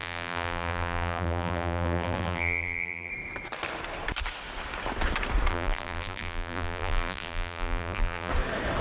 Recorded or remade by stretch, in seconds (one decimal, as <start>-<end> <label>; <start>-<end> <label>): 0.0-3.1 remade; 3.1-5.5 recorded; 5.5-8.3 remade; 8.3-8.8 recorded